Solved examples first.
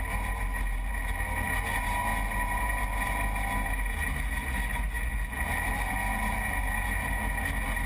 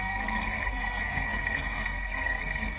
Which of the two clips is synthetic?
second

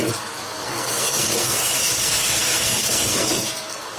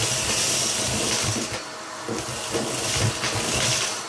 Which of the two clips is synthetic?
first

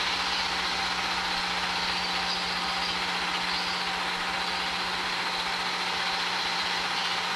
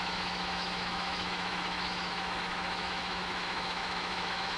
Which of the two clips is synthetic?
second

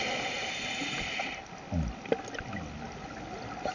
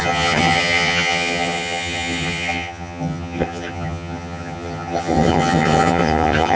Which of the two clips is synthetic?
second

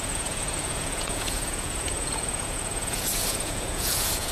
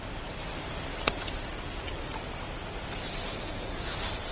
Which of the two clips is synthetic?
first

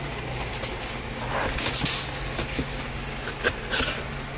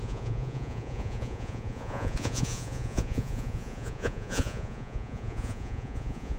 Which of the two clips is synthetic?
second